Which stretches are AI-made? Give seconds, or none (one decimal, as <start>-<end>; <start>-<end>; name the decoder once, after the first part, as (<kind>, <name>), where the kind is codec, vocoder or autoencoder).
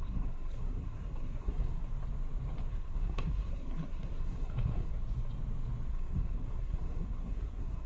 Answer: 0.0-1.9 (codec, SNAC); 2.7-4.9; 5.9-7.9